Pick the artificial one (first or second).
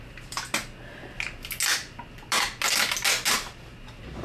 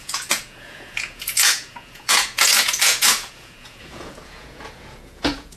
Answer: second